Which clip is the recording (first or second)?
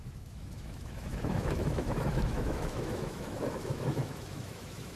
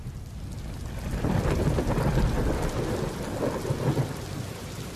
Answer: second